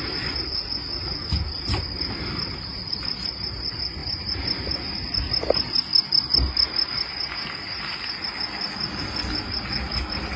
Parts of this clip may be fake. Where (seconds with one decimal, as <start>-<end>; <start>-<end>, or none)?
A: none